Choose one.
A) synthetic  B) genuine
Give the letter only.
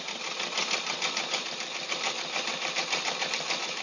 B